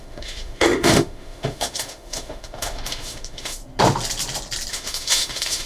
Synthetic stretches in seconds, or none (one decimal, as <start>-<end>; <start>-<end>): 0.0-3.6; 4.7-5.7